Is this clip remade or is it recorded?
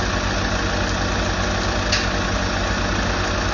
recorded